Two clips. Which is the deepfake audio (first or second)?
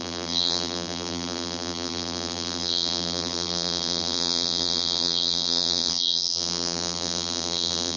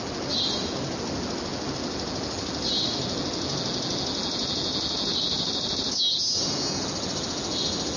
first